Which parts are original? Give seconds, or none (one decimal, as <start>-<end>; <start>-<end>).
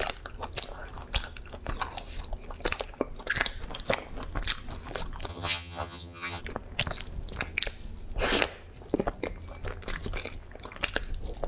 0.0-5.3; 6.4-11.5